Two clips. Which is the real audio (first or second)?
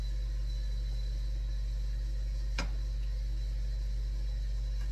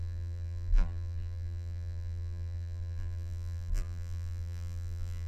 first